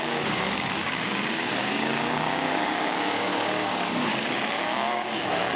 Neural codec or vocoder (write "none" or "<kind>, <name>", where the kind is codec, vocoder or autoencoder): codec, DAC